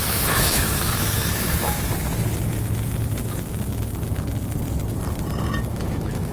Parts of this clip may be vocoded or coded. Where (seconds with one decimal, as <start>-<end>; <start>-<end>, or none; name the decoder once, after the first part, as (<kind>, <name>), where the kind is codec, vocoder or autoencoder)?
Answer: 0.0-1.9 (autoencoder, DAC-VAE); 5.7-6.3